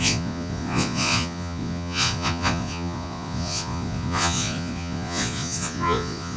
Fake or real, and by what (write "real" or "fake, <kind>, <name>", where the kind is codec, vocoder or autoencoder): fake, vocoder, Vocos